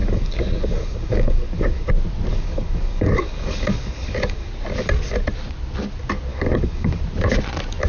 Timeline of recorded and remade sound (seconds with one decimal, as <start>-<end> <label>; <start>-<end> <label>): 0.0-1.9 remade; 1.9-2.3 recorded; 2.3-4.5 remade; 4.5-6.3 recorded; 6.3-7.0 remade; 7.0-7.9 recorded